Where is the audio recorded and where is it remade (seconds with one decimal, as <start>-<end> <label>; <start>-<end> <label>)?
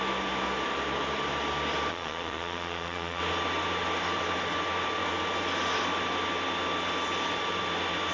0.0-1.9 recorded; 1.9-3.2 remade; 3.2-8.1 recorded